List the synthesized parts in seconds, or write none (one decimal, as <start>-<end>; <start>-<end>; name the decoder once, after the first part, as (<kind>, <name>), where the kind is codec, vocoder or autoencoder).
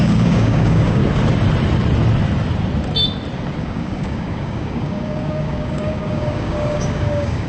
0.0-1.0 (codec, DAC); 3.6-7.5